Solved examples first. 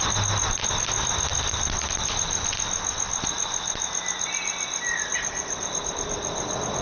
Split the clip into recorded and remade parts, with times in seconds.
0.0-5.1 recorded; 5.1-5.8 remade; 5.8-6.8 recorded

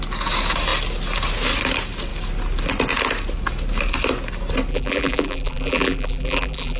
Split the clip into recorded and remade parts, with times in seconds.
0.0-4.7 recorded; 4.7-6.8 remade

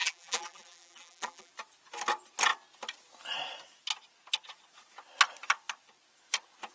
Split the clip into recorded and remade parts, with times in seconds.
0.0-1.5 remade; 1.5-6.7 recorded

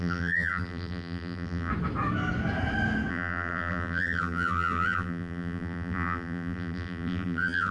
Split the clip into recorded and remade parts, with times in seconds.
0.0-1.7 remade; 1.7-3.1 recorded; 3.1-7.7 remade